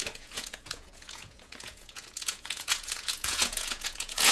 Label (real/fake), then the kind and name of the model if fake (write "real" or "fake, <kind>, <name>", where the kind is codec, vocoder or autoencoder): fake, vocoder, Vocos